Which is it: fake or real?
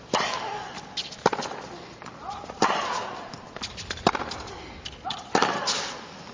fake